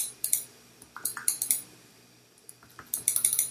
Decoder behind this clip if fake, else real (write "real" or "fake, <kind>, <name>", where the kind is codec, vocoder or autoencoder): real